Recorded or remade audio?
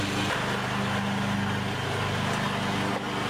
recorded